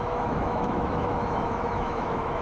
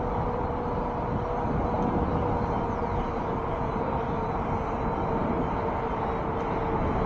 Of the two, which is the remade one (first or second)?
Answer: first